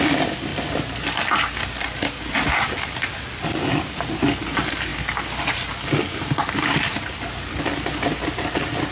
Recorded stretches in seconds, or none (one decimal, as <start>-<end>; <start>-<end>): 0.0-0.5; 2.3-4.9; 5.4-8.9